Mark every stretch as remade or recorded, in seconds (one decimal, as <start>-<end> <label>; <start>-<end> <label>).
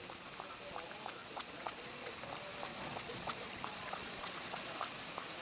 0.0-1.2 recorded; 1.2-2.1 remade; 2.1-2.7 recorded; 2.7-4.7 remade; 4.7-5.4 recorded